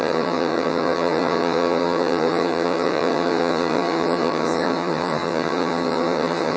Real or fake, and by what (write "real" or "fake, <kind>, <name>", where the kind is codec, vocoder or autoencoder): fake, vocoder, HiFi-GAN